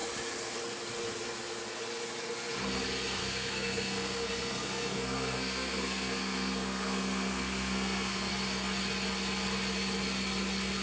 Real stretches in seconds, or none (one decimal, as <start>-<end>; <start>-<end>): 0.0-3.2; 8.3-10.8

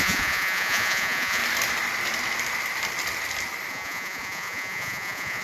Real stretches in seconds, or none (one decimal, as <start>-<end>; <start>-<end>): 1.4-3.7

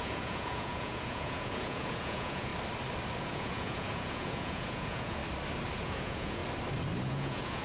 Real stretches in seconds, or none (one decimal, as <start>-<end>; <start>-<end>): 2.5-3.2; 5.2-5.8; 6.4-7.1

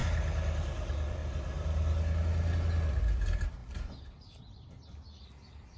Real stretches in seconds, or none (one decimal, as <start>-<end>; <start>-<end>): 0.0-0.6; 1.2-3.0

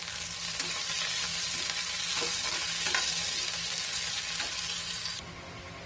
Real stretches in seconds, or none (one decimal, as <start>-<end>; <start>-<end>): 0.0-5.9